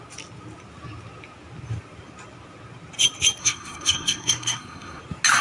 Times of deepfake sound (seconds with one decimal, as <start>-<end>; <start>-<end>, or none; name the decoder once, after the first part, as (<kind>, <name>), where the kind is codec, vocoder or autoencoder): 3.4-5.0 (codec, SNAC)